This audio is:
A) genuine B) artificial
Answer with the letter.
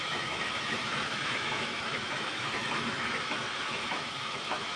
B